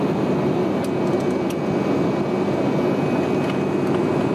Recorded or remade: recorded